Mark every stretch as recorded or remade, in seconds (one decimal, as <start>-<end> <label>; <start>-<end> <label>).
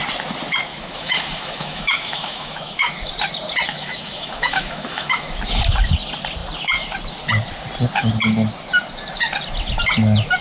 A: 0.0-0.7 recorded; 0.7-3.1 remade; 3.1-3.7 recorded; 3.7-5.4 remade; 5.4-10.4 recorded